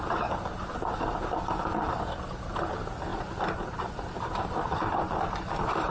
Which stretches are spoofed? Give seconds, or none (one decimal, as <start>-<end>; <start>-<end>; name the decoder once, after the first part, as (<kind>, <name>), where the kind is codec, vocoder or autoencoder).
none